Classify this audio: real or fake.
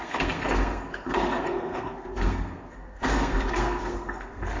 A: fake